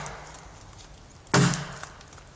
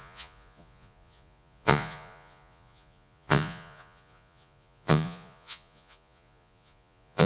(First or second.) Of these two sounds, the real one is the first